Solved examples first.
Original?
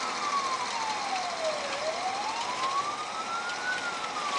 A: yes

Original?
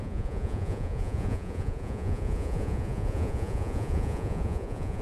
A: no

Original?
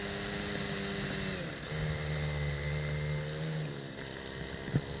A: yes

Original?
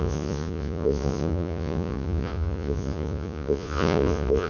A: no